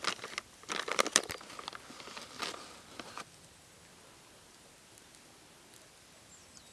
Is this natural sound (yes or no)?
yes